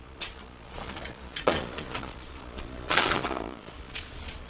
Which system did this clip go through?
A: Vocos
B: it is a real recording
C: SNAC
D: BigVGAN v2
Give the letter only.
A